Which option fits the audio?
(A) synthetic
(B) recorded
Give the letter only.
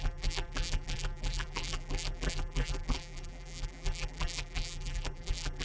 A